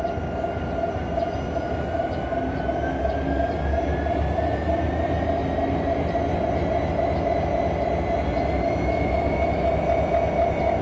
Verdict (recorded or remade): recorded